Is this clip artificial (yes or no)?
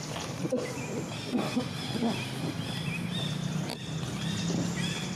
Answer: no